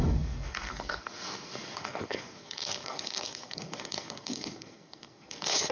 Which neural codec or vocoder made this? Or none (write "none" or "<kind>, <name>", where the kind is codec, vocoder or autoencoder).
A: codec, SNAC